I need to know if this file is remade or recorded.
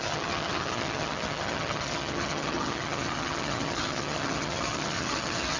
remade